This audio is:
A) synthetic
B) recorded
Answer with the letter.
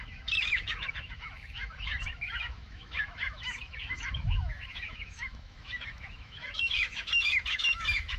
A